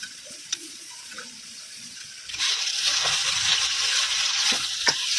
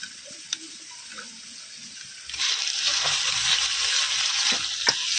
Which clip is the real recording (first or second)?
second